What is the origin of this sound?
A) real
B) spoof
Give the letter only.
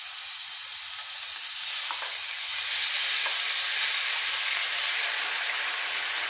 A